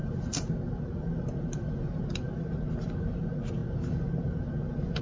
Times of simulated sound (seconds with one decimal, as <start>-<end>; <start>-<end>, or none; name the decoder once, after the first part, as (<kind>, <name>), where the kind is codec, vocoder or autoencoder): none